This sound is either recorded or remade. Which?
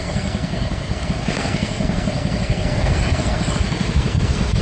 remade